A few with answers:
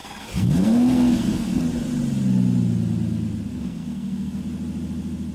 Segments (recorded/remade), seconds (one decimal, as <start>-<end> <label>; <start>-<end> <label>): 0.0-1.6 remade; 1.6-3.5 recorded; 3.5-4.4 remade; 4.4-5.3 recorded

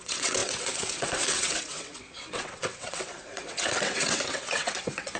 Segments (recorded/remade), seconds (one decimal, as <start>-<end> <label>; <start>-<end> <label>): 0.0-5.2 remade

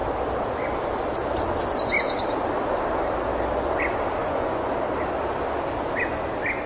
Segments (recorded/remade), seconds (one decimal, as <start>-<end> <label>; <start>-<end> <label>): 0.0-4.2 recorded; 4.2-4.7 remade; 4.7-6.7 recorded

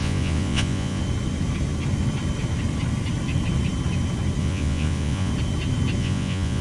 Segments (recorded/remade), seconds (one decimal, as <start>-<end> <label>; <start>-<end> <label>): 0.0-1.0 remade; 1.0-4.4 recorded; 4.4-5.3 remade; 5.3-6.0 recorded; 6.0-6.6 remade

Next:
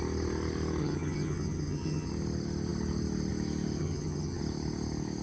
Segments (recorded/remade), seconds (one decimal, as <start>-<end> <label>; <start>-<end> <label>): 0.0-0.8 recorded; 0.8-2.1 remade; 2.1-3.8 recorded; 3.8-4.4 remade; 4.4-5.2 recorded

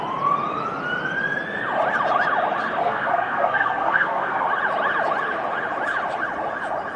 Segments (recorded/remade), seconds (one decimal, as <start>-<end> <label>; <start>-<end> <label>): 0.0-2.8 recorded; 2.8-4.5 remade; 4.5-7.0 recorded